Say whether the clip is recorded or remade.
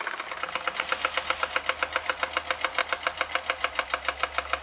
recorded